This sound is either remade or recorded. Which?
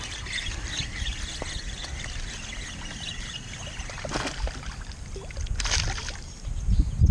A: recorded